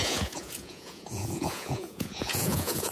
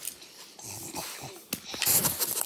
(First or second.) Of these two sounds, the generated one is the first